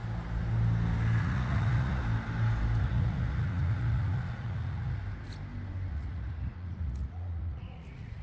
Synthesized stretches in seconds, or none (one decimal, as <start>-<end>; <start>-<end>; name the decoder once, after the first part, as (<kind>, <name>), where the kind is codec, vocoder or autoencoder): 1.2-2.0 (vocoder, Vocos); 2.8-5.0; 5.9-8.2